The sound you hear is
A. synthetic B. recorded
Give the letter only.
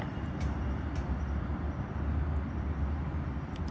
B